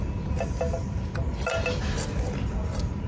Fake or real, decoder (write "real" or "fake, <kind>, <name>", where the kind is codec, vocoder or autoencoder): real